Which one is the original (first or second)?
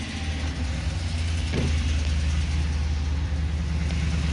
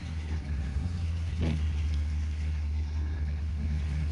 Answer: first